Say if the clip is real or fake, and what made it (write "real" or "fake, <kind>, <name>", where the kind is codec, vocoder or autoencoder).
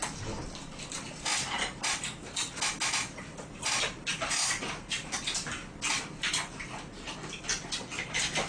real